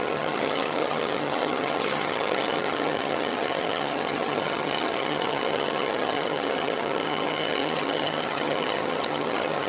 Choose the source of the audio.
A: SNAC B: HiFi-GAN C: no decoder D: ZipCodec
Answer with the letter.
B